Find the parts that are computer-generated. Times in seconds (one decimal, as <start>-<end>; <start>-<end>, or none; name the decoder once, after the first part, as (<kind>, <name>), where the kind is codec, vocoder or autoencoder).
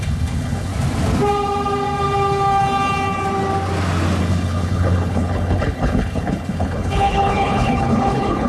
0.0-0.7 (codec, HILCodec); 4.2-8.5